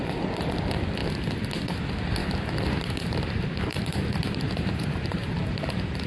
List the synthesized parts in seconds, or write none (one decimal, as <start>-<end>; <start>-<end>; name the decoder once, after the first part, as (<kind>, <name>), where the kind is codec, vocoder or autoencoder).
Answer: 2.2-6.1 (vocoder, BigVGAN v2)